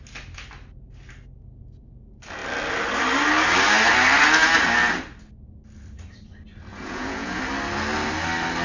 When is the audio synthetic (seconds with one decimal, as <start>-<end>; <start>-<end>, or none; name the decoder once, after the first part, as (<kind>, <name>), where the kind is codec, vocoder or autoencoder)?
6.7-7.4 (vocoder, Vocos)